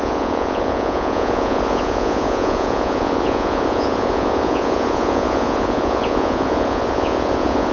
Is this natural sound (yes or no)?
no